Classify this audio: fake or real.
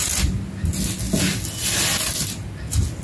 real